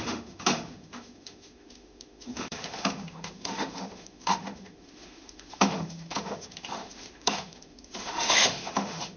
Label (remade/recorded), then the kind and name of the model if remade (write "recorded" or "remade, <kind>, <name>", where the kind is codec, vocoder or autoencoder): remade, autoencoder, DAC-VAE